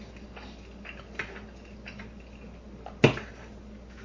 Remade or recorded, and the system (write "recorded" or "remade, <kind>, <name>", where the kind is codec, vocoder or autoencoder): recorded